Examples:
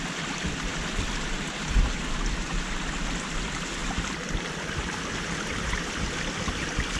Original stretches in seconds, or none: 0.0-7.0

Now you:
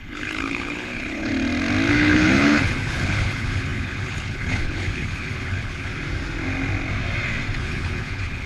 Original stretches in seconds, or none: 1.3-1.9; 5.9-7.6

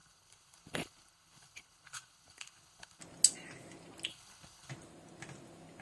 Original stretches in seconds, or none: 3.0-4.1; 4.7-5.8

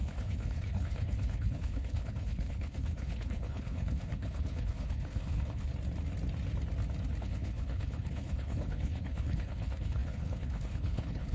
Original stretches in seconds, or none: 5.7-7.2

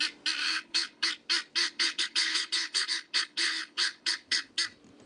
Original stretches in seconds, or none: 0.0-0.4; 1.1-1.6; 4.5-5.1

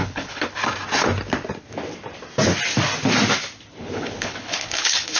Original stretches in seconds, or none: 0.6-3.7